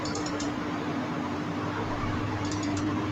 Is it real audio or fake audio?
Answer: fake